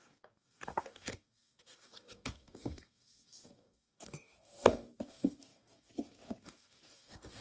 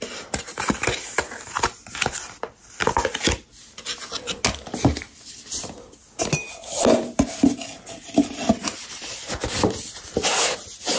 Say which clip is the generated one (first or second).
first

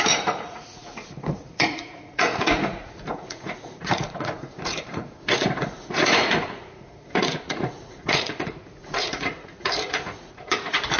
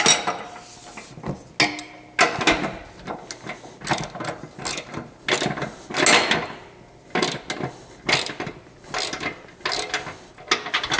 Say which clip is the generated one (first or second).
first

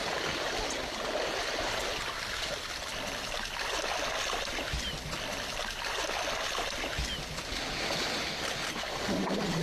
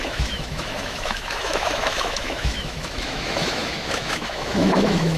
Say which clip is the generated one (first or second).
second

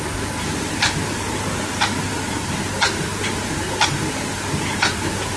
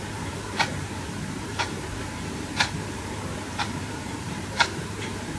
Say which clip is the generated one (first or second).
second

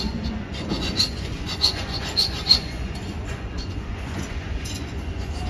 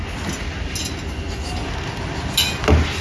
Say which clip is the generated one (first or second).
first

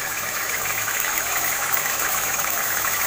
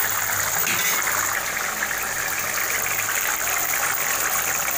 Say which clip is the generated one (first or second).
first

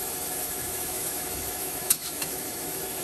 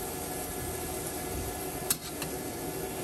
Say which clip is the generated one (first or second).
first